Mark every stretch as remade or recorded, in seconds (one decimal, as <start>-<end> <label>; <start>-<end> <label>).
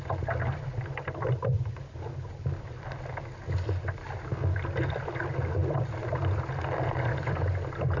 0.0-5.6 recorded; 5.6-8.0 remade